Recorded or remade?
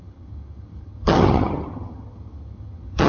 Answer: remade